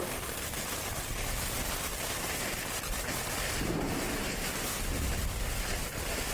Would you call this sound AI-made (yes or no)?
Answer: no